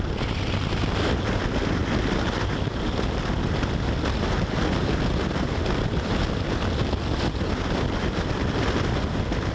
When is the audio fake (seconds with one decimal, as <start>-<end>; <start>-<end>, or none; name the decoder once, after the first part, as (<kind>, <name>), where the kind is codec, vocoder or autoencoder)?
none